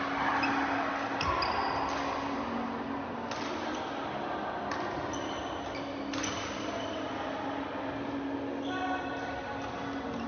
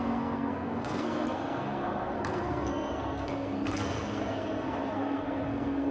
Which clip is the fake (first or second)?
second